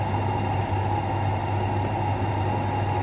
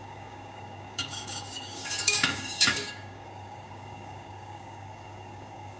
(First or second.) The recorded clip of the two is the first